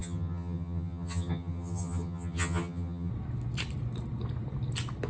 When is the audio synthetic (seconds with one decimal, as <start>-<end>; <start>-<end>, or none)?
0.0-3.1